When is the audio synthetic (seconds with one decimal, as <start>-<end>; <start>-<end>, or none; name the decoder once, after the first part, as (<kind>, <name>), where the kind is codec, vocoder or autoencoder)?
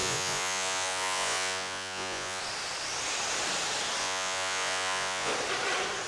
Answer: 0.0-2.4 (vocoder, Vocos); 4.0-5.3